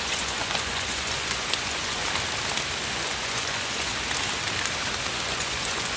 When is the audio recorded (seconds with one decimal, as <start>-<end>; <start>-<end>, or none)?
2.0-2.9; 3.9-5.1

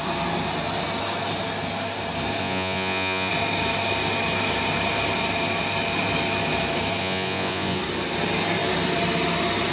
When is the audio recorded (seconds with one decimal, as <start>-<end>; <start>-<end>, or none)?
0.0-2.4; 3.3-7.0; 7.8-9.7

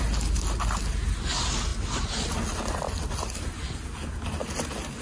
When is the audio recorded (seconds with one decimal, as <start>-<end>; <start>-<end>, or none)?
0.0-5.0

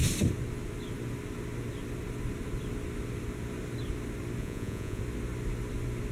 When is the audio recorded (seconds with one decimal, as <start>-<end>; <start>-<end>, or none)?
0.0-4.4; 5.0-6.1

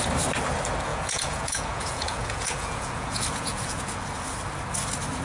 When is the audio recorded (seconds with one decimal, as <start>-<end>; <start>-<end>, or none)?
0.0-0.9; 4.0-5.2

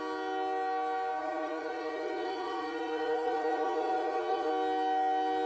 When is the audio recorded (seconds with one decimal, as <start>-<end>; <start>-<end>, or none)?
0.0-1.2; 4.5-5.5

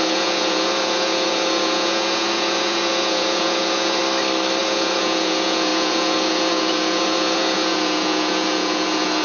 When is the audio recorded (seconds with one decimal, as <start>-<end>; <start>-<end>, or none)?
4.0-4.6